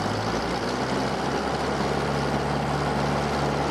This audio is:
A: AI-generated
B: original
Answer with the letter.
A